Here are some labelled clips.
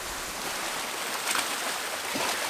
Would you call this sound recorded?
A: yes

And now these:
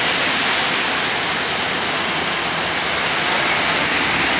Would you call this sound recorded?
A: yes